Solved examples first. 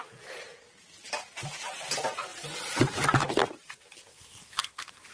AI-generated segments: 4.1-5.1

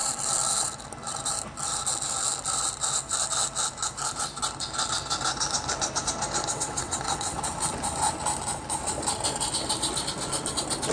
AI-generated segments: 6.5-7.5

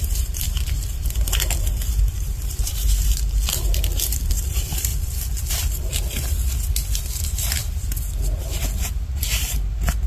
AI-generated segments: 0.0-4.9; 5.5-10.1